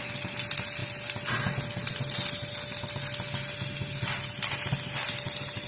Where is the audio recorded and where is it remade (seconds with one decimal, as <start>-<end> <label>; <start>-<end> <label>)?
0.0-5.7 recorded